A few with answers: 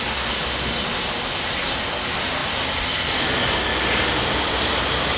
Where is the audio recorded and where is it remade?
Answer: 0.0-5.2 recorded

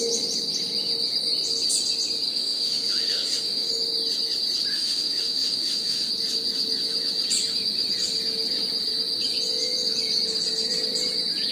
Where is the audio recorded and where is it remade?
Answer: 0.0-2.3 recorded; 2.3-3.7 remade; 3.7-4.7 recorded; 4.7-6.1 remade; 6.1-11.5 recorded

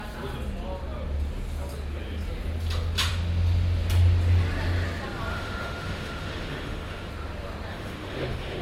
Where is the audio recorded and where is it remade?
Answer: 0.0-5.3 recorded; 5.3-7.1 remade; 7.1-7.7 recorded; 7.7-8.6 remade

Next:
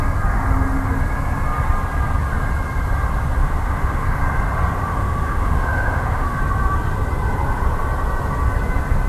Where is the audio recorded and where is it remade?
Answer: 0.0-3.4 recorded; 3.4-4.2 remade; 4.2-4.9 recorded; 4.9-6.4 remade; 6.4-9.1 recorded

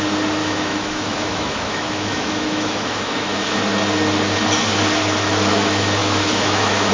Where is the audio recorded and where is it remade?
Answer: 0.0-0.4 recorded; 0.4-3.6 remade; 3.6-6.0 recorded; 6.0-6.9 remade

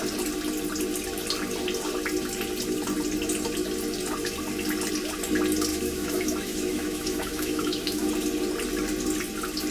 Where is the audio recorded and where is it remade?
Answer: 0.0-5.7 recorded; 5.7-8.1 remade; 8.1-9.7 recorded

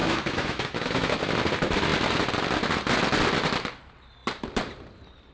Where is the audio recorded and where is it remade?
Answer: 0.0-1.2 remade; 1.2-5.3 recorded

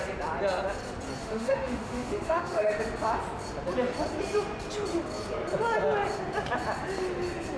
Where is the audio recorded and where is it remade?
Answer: 0.0-1.2 recorded; 1.2-2.8 remade; 2.8-7.6 recorded